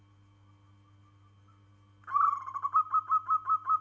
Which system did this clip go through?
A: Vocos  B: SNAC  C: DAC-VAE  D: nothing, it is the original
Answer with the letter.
D